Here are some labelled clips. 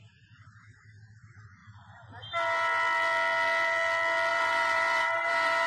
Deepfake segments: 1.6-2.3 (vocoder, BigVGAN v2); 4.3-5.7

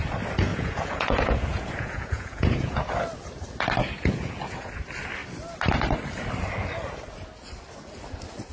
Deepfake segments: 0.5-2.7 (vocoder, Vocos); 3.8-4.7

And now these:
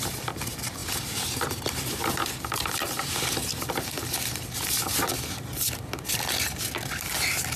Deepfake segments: none

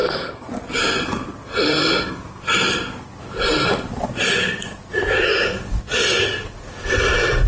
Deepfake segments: 0.0-0.5 (codec, SNAC)

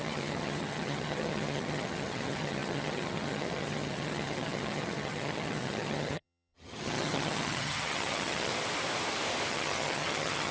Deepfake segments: 0.0-8.5 (vocoder, HiFi-GAN); 9.5-10.5

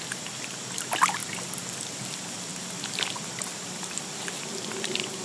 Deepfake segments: none

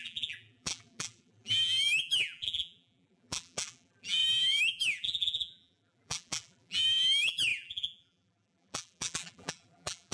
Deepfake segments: 0.0-10.1 (vocoder, BigVGAN v2)

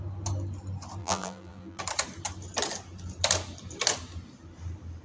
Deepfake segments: 1.0-1.8 (vocoder, BigVGAN v2)